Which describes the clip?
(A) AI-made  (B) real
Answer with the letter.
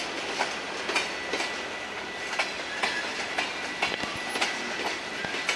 B